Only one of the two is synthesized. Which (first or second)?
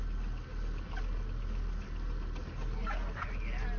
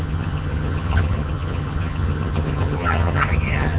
second